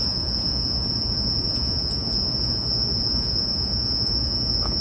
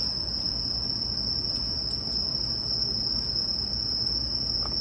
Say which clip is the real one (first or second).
second